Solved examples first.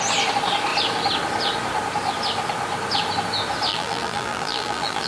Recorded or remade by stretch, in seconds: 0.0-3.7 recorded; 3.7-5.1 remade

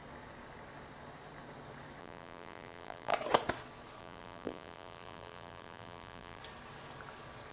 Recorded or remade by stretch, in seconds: 0.0-2.0 recorded; 2.0-3.1 remade; 3.1-4.0 recorded; 4.0-6.4 remade; 6.4-7.5 recorded

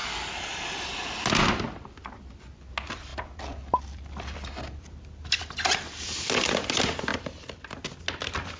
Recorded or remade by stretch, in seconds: 0.0-0.7 remade; 0.7-3.1 recorded; 3.1-5.3 remade; 5.3-8.6 recorded

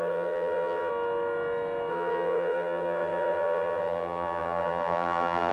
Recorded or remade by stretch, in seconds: 0.0-0.9 remade; 0.9-1.9 recorded; 1.9-5.5 remade

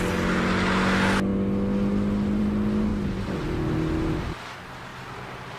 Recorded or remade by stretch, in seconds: 0.0-5.6 recorded

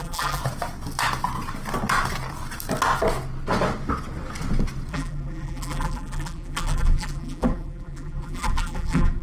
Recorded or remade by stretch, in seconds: 0.0-0.4 remade; 0.4-4.9 recorded; 4.9-9.2 remade